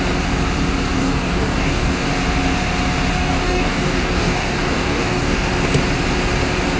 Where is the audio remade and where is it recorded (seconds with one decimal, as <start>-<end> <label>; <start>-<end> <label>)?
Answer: 0.0-1.0 recorded; 1.0-2.1 remade; 2.1-3.2 recorded; 3.2-5.5 remade; 5.5-6.8 recorded